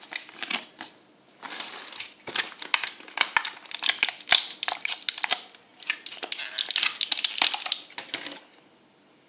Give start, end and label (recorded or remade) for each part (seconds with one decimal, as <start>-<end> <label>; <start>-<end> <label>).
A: 0.0-9.3 recorded